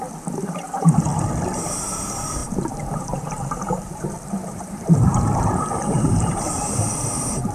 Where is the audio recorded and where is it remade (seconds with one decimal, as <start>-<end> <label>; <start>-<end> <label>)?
0.0-1.1 remade; 1.1-1.7 recorded; 1.7-7.5 remade